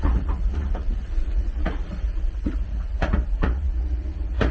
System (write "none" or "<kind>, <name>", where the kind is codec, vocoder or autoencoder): vocoder, Vocos